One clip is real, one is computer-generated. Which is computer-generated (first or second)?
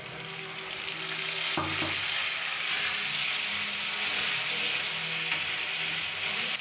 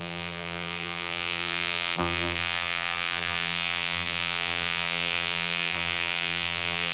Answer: second